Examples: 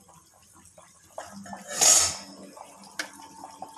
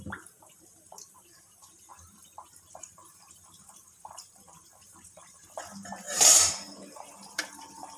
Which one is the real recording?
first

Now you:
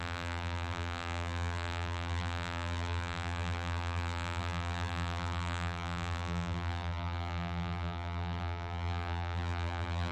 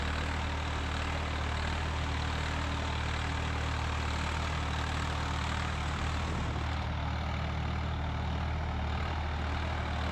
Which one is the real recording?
second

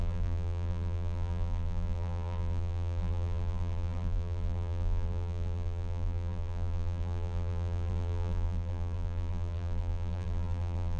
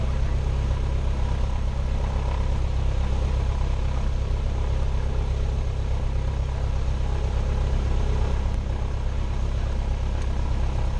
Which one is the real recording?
second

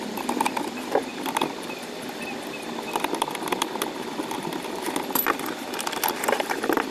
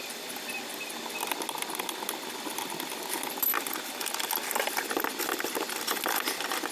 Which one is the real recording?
second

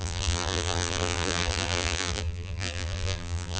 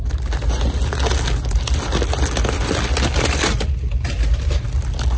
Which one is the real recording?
second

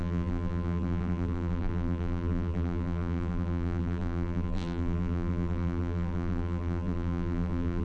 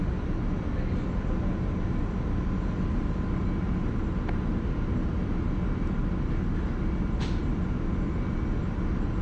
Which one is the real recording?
second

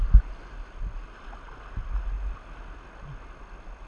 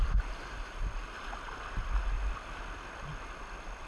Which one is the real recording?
first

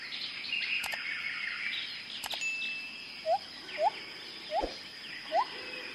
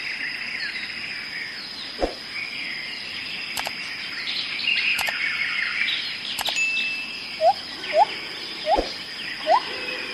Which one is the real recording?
first